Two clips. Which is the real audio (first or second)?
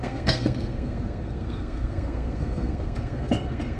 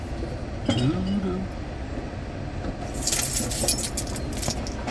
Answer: second